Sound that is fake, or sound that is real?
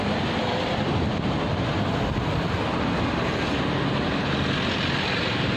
real